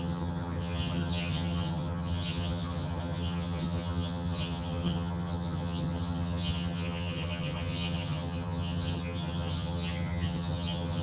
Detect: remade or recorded remade